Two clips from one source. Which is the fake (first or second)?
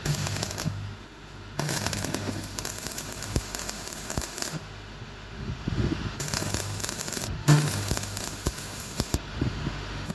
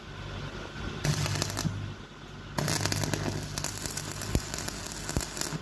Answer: first